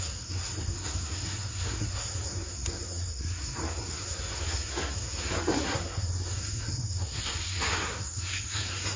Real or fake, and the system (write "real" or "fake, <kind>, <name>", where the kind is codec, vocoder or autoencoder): fake, codec, SNAC